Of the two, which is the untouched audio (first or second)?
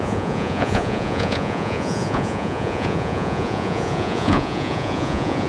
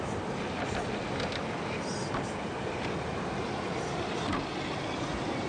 second